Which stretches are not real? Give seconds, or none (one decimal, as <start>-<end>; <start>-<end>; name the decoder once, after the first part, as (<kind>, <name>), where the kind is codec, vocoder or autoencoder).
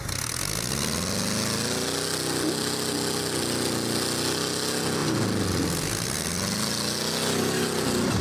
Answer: none